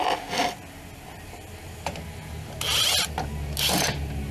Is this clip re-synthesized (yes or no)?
no